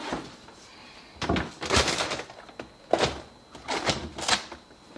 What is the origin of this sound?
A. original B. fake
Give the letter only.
A